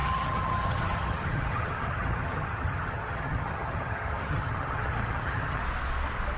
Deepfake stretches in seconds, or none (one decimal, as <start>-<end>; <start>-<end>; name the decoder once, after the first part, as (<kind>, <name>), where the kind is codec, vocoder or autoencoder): 0.0-5.6 (vocoder, HiFi-GAN)